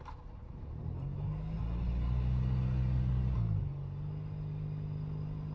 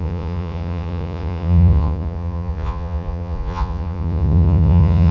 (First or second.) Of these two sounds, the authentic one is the first